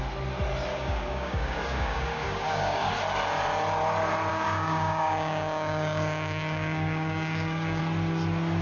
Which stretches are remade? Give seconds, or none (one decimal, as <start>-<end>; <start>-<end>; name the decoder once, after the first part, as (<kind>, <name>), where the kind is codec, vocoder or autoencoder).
0.7-2.9 (codec, DAC); 4.3-7.8